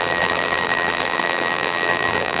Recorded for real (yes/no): no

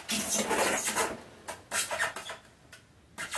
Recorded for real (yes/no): yes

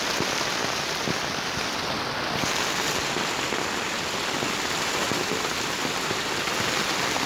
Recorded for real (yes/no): yes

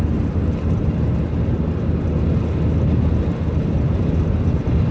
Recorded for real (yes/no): yes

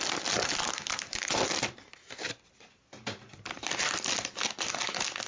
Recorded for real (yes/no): yes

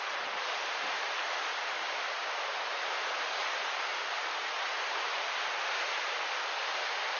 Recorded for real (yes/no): yes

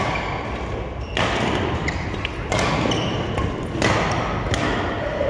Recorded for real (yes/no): yes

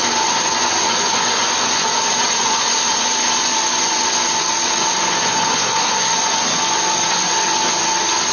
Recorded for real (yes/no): no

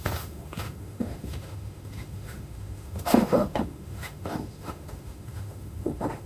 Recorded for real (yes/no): no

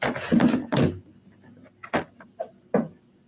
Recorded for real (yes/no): yes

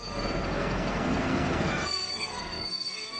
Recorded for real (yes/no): no